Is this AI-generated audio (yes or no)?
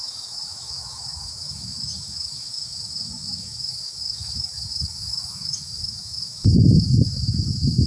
yes